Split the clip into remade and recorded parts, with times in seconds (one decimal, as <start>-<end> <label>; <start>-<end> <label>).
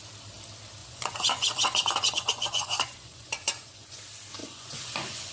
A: 0.0-0.8 recorded; 0.8-4.0 remade; 4.0-4.4 recorded; 4.4-5.3 remade